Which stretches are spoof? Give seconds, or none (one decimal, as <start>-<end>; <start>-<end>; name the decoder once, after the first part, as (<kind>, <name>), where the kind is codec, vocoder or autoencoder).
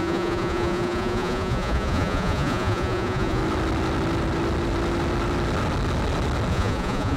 0.0-3.4 (vocoder, Vocos); 6.5-7.2